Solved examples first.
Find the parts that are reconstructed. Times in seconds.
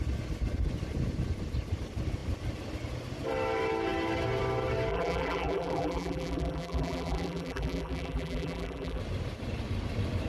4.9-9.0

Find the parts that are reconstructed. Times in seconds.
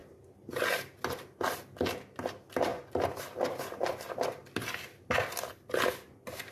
none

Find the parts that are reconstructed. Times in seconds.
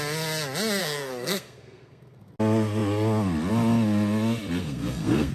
0.8-2.3; 4.6-5.3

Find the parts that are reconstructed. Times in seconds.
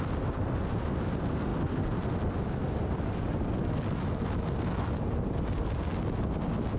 none